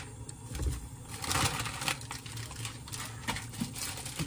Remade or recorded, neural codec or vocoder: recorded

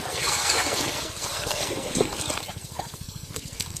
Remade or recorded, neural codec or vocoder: remade, codec, SNAC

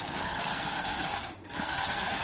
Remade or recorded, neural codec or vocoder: remade, codec, SNAC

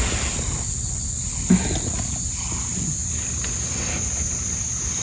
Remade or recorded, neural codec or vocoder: recorded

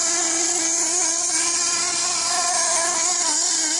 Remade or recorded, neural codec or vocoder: recorded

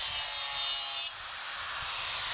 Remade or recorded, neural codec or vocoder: recorded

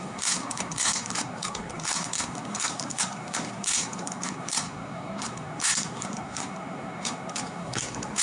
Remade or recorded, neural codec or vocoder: remade, codec, SNAC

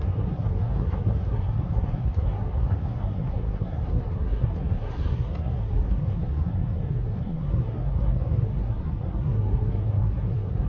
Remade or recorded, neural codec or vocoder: remade, codec, SNAC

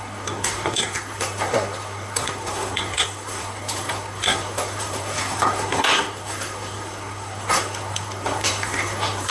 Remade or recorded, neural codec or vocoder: remade, codec, SNAC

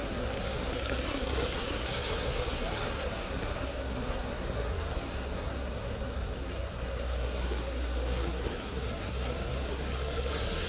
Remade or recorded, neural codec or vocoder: remade, codec, SNAC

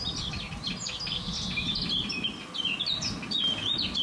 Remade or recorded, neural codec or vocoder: recorded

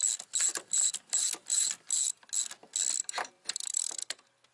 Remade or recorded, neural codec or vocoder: recorded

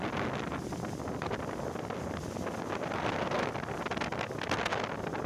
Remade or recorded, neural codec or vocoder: recorded